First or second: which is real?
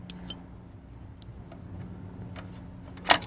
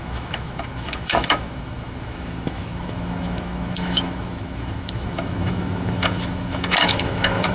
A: first